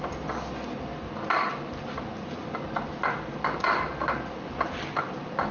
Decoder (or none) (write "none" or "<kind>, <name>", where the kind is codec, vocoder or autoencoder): none